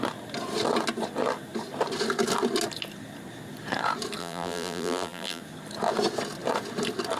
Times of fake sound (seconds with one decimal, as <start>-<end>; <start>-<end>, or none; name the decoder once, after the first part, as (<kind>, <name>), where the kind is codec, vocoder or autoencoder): 4.2-5.4 (vocoder, BigVGAN v2)